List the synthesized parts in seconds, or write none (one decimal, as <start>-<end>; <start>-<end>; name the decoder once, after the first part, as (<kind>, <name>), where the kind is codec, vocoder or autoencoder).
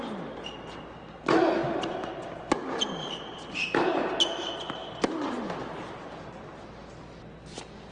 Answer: none